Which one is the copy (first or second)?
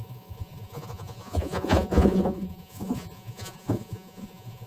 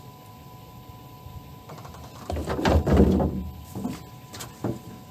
first